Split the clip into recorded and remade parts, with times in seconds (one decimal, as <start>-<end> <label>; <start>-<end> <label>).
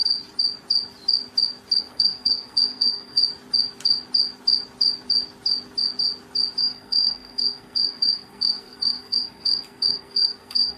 0.0-1.8 recorded; 1.8-3.2 remade; 3.2-6.6 recorded; 6.6-10.8 remade